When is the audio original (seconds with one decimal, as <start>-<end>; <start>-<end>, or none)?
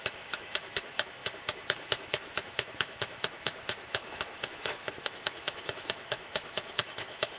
none